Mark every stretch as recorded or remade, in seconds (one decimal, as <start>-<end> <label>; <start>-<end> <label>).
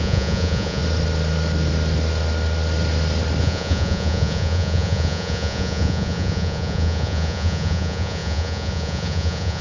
0.0-0.8 remade; 0.8-3.4 recorded; 3.4-9.6 remade